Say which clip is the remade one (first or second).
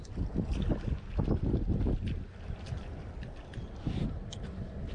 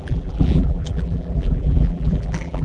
second